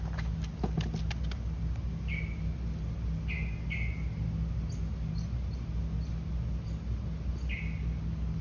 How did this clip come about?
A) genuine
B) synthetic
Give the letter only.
A